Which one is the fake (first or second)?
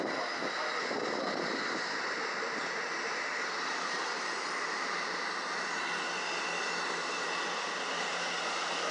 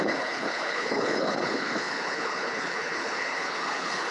second